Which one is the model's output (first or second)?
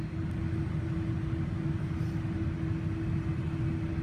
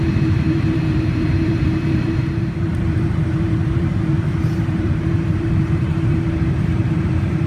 second